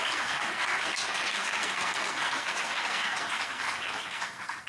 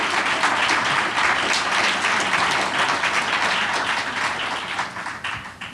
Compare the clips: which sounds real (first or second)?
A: second